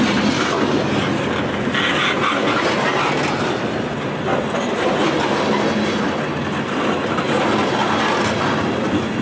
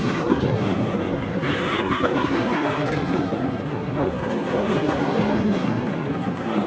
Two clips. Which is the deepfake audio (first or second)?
second